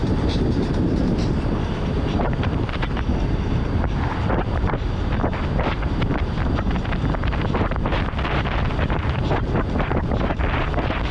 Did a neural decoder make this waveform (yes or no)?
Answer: yes